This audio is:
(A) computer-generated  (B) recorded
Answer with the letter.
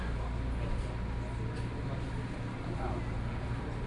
B